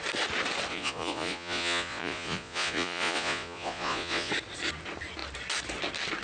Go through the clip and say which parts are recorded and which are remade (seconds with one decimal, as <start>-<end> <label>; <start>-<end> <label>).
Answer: 0.0-0.7 recorded; 0.7-4.3 remade; 4.3-6.2 recorded